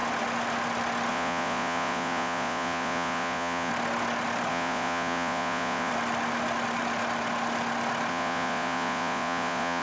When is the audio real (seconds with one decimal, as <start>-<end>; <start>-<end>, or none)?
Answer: 0.0-1.1; 3.7-4.5; 5.9-8.1